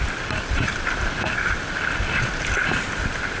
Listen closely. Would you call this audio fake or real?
real